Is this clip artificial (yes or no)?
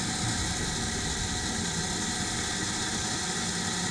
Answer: no